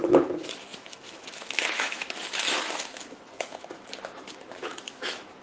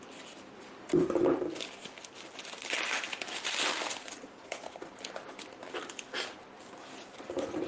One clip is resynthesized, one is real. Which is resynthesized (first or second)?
first